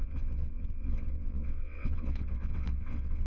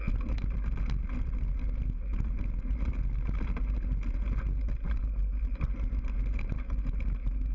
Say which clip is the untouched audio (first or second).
second